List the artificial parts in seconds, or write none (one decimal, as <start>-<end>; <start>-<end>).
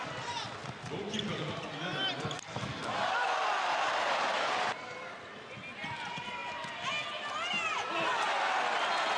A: none